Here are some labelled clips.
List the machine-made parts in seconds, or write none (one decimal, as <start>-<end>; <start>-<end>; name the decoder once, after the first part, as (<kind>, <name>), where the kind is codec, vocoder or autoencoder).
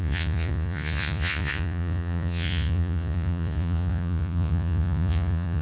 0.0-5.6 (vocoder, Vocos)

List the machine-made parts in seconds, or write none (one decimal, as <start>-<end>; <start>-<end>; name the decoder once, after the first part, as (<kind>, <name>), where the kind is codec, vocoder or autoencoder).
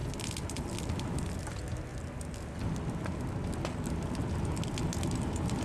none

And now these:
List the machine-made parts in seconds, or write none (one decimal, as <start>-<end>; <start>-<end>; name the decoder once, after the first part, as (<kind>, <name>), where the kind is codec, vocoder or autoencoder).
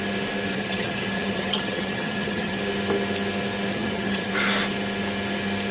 0.5-2.6 (vocoder, HiFi-GAN); 3.7-4.3